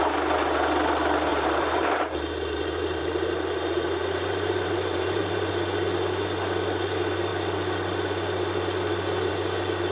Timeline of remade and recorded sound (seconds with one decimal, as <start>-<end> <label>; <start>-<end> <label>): 0.0-1.3 recorded; 1.3-5.5 remade; 5.5-9.9 recorded